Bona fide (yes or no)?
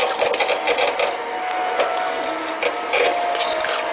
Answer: yes